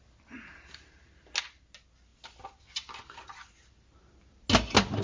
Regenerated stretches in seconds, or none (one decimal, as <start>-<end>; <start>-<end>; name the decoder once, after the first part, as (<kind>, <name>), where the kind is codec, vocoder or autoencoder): none